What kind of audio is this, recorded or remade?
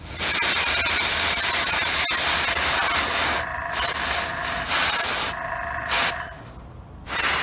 recorded